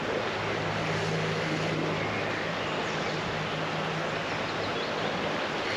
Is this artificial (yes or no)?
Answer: no